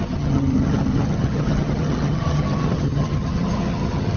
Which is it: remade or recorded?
remade